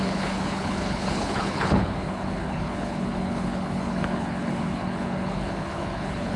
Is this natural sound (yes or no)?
no